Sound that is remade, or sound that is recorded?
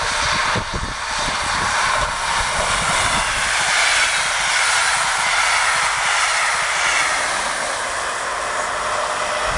recorded